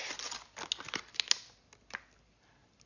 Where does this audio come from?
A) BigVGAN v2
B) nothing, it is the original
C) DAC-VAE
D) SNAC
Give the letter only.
B